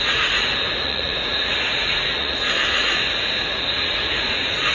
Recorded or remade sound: remade